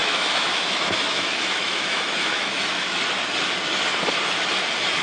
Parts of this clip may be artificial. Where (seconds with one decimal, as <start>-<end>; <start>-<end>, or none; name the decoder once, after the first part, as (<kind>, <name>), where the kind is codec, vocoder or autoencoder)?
0.0-3.0 (autoencoder, DAC-VAE)